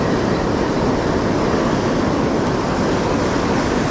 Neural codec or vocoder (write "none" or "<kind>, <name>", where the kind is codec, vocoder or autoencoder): none